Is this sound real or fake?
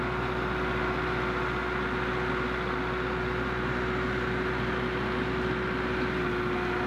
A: real